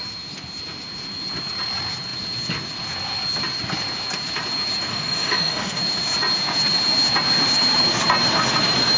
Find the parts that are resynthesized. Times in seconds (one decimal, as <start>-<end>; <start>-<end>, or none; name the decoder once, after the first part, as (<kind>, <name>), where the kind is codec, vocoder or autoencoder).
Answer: 4.9-5.8 (autoencoder, DAC-VAE)